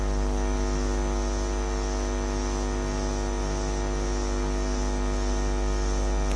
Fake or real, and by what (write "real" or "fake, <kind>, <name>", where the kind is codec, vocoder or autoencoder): real